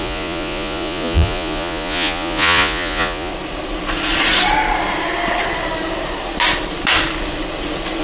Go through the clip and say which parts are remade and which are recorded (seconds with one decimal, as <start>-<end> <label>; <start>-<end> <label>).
0.0-3.3 remade; 3.3-8.0 recorded